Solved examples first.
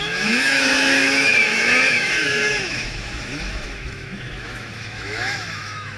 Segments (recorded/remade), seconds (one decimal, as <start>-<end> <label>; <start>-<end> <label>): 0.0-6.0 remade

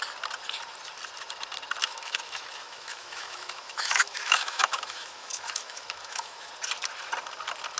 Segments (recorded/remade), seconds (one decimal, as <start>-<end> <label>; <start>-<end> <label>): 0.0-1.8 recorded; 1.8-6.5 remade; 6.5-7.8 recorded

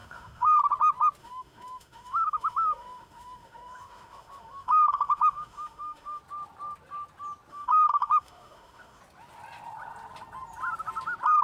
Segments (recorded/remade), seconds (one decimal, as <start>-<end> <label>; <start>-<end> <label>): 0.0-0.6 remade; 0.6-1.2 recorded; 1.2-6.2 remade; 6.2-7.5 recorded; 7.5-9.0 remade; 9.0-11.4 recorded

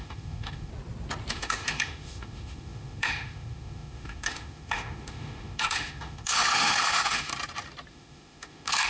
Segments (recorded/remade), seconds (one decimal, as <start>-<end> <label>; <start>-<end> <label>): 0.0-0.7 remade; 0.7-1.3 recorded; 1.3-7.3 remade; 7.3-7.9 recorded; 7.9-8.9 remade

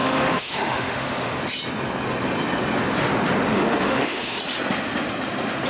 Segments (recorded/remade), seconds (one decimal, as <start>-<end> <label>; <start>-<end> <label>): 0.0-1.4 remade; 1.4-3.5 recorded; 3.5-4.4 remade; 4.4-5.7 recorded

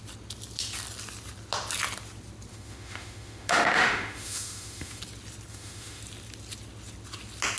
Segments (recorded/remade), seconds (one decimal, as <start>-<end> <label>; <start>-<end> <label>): 0.0-2.5 recorded; 2.5-5.0 remade; 5.0-5.5 recorded; 5.5-6.0 remade; 6.0-7.6 recorded